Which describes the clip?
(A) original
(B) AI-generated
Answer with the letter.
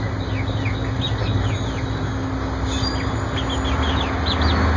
A